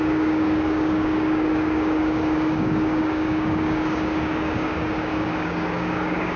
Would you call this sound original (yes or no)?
no